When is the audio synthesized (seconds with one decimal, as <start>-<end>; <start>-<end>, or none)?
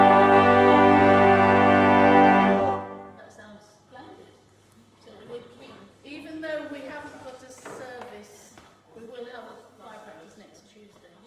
0.0-1.0; 2.6-6.1; 8.5-11.3